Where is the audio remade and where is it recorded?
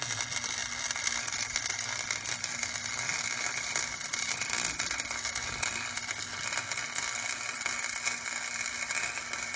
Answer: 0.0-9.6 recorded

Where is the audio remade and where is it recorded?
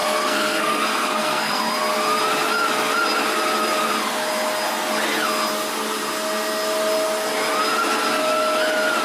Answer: 0.0-1.6 remade; 1.6-9.0 recorded